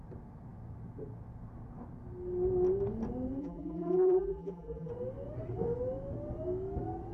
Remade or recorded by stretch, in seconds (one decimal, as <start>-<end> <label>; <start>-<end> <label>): 0.0-3.4 recorded; 3.4-4.9 remade; 4.9-7.1 recorded